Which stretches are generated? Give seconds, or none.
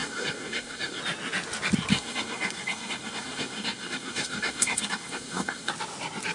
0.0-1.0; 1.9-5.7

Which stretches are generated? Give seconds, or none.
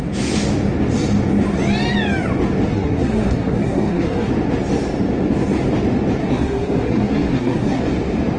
2.7-4.3; 6.2-7.8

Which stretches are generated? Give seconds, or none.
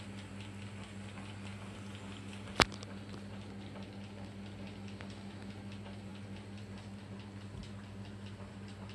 none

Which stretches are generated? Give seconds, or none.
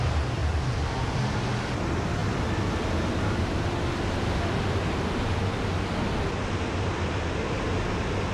none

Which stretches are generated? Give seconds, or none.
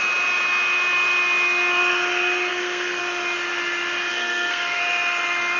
2.5-3.0; 4.1-4.8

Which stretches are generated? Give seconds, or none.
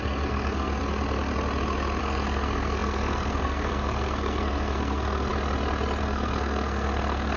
0.0-0.8; 2.0-5.3; 6.0-7.4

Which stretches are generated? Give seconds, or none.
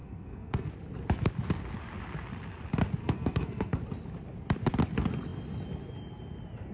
0.0-0.7; 3.0-3.8